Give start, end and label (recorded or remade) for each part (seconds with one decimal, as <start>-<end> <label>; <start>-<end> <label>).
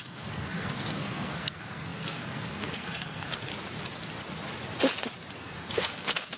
0.0-3.5 remade; 3.5-5.3 recorded; 5.3-6.4 remade